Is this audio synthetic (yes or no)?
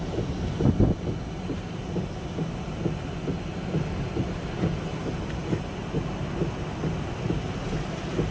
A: no